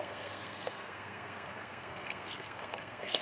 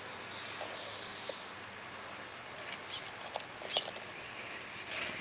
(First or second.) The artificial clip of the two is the first